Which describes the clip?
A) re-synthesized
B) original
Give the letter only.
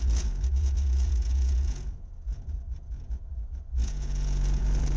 A